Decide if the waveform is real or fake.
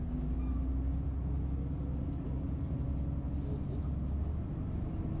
real